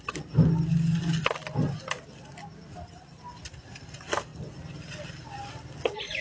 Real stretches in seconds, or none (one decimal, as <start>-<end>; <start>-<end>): 0.0-6.2